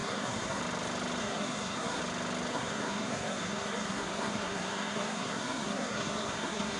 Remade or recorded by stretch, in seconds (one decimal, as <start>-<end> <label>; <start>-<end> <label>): 0.0-0.6 remade; 0.6-1.2 recorded; 1.2-2.0 remade; 2.0-2.5 recorded; 2.5-6.8 remade